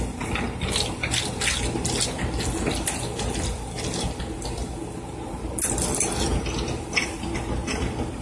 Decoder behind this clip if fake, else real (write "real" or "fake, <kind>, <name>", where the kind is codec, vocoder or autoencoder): real